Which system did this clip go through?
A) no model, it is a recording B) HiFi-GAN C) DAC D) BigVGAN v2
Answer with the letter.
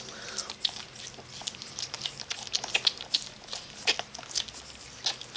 A